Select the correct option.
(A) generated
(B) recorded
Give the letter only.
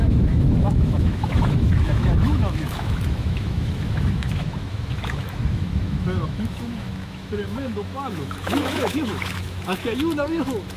A